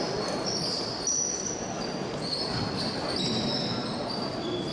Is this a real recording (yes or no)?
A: yes